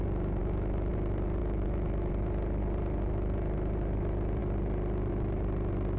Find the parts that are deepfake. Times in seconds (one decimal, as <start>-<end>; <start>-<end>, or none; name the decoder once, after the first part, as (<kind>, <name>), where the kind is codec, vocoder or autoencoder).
0.4-0.9 (autoencoder, DAC-VAE); 1.4-2.1